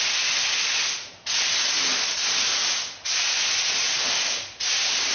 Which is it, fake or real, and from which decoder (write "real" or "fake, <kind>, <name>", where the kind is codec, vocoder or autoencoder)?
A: real